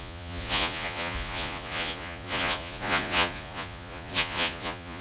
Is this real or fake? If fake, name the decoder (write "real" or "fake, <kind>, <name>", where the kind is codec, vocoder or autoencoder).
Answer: fake, vocoder, Vocos